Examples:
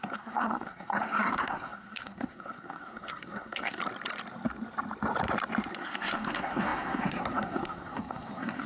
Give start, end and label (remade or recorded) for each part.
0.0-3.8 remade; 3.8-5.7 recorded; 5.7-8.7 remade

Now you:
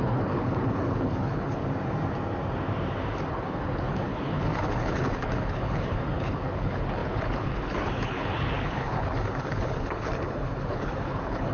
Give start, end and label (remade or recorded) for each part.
0.0-1.6 remade; 1.6-3.3 recorded; 3.3-11.5 remade